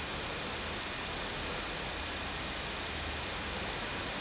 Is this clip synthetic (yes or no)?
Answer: no